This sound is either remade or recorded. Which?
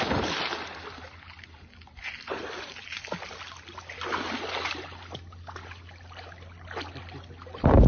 recorded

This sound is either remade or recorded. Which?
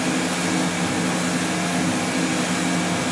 recorded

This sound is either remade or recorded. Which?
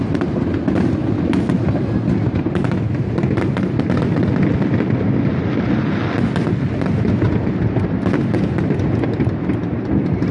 recorded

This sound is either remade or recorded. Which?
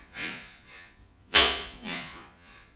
remade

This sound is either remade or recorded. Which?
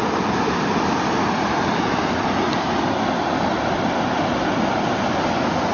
recorded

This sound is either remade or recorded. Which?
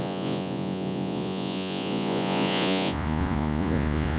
remade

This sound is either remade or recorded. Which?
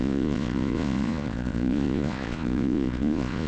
remade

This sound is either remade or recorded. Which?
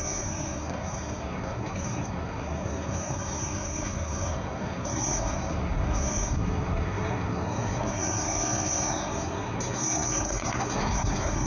remade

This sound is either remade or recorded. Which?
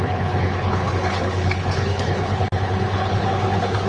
remade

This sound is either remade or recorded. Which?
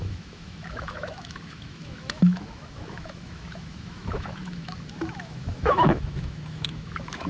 remade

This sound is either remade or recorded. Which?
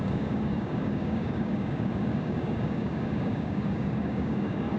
remade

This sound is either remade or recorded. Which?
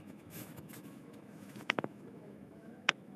remade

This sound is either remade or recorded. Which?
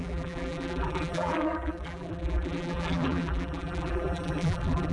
remade